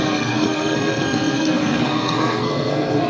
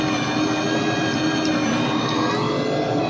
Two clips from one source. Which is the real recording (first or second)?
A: second